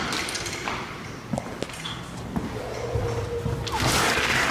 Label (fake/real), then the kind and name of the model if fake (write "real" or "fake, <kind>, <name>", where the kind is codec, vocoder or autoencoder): real